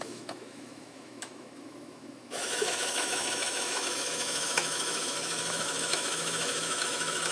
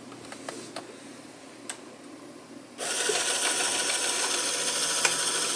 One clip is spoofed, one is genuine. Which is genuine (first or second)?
second